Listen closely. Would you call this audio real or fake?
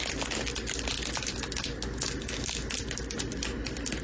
real